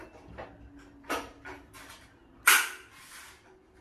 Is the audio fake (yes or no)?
no